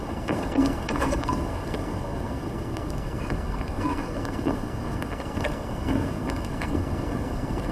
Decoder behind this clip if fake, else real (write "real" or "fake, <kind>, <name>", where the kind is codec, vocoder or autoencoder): fake, codec, SNAC